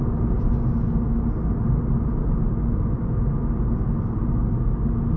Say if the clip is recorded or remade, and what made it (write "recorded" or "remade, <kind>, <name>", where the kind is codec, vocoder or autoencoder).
recorded